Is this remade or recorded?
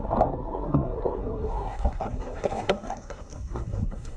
remade